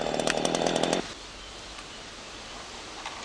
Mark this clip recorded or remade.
recorded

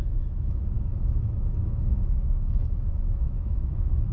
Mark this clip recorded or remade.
remade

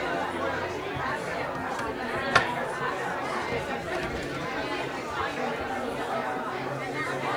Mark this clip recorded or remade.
recorded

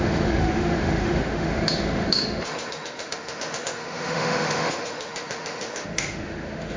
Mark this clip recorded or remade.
remade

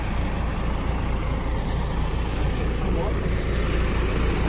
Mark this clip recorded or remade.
recorded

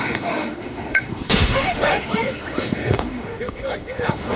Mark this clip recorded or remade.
remade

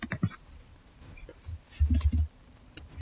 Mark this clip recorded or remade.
recorded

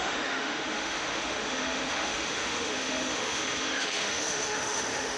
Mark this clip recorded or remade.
remade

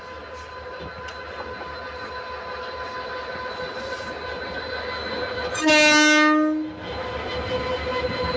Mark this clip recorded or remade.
recorded